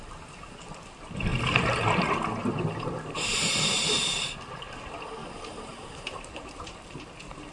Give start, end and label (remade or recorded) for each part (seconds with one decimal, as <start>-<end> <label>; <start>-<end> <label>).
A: 0.0-2.4 recorded; 2.4-4.6 remade; 4.6-5.2 recorded; 5.2-7.0 remade; 7.0-7.5 recorded